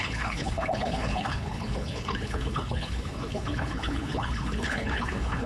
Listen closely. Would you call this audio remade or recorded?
remade